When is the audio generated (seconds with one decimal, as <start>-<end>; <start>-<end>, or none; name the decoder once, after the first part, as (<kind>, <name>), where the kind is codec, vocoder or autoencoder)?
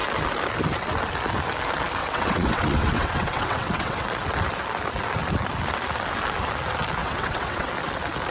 2.0-4.0 (vocoder, WaveNeXt); 7.0-7.7